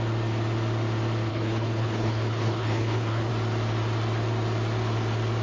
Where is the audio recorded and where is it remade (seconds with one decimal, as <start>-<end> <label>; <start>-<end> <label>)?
0.0-1.3 recorded; 1.3-3.3 remade; 3.3-5.4 recorded